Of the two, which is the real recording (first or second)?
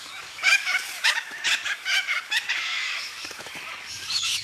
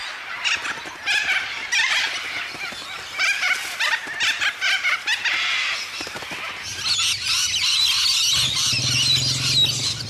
second